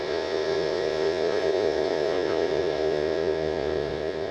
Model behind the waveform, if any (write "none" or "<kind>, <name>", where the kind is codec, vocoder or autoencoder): vocoder, Vocos